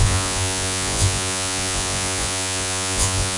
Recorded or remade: remade